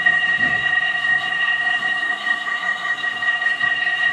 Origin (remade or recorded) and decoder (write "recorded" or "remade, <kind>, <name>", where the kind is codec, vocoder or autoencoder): remade, codec, SNAC